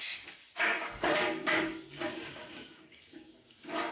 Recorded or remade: remade